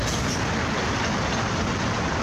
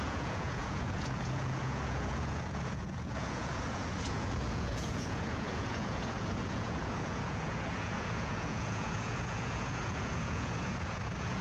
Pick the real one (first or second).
first